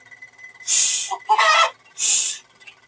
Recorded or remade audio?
recorded